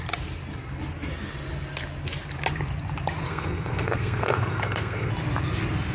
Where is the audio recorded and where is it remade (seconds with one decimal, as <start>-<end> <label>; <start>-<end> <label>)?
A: 0.0-3.3 recorded; 3.3-5.1 remade; 5.1-5.9 recorded